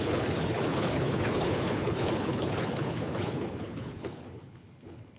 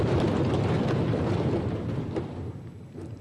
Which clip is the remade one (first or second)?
first